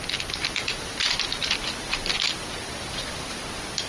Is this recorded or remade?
remade